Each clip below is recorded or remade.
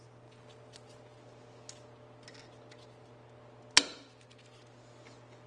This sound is recorded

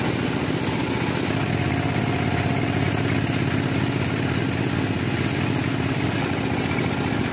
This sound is recorded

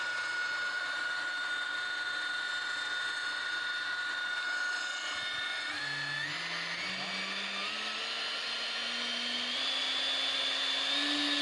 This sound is recorded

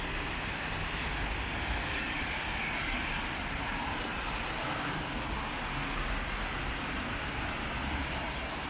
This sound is recorded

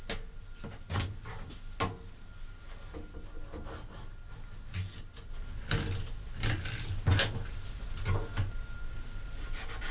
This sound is recorded